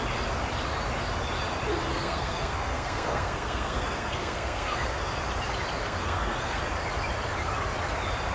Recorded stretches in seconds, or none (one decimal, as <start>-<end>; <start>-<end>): 0.0-1.9; 5.0-5.8; 6.6-8.3

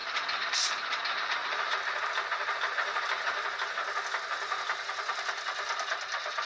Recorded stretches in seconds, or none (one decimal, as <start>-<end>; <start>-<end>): 0.0-6.5

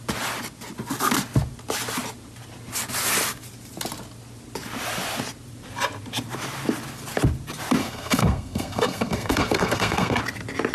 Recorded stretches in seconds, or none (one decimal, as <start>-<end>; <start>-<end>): 0.0-7.8; 10.2-10.7

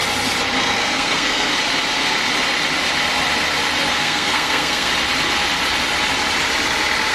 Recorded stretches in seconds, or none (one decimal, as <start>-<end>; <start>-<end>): 0.0-0.6; 1.5-3.9; 4.9-7.1